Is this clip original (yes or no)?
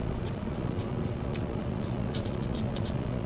no